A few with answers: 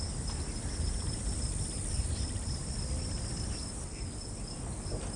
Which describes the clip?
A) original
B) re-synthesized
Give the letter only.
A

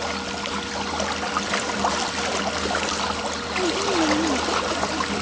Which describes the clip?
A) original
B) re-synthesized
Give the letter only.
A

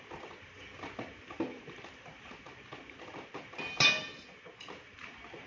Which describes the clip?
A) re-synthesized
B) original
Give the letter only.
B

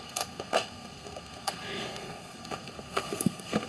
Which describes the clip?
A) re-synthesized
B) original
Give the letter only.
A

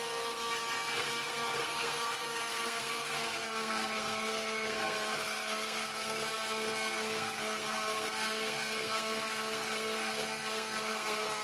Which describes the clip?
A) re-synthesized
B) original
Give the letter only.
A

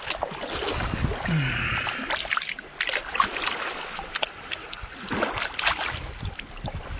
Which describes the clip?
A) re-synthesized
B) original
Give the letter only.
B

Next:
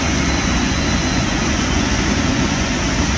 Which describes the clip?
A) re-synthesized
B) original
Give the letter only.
A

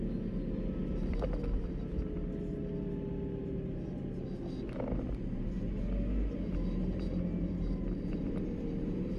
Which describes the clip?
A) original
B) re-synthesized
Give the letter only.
A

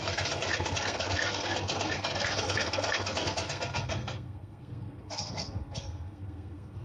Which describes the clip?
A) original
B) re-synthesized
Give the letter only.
B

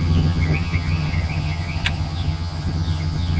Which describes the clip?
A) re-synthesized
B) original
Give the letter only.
A